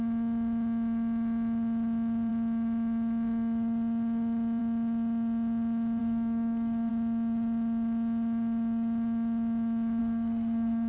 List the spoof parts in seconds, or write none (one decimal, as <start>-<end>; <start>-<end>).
6.0-6.9; 10.0-10.9